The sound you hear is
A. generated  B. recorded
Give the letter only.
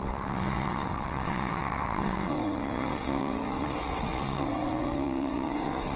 A